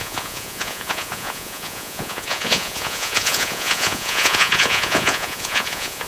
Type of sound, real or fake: fake